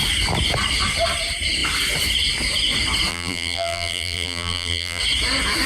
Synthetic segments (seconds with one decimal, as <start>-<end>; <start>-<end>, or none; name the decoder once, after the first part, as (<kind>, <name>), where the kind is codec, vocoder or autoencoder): 3.1-5.0 (vocoder, BigVGAN v2)